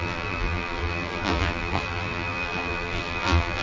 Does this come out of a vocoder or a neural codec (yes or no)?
yes